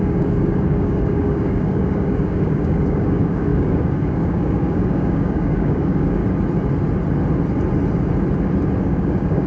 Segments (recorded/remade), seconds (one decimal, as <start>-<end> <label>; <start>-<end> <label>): 0.0-6.2 remade; 6.2-8.8 recorded; 8.8-9.5 remade